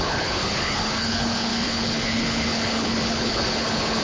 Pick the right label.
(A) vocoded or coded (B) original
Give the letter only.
A